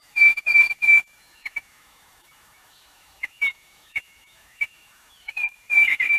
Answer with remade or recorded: remade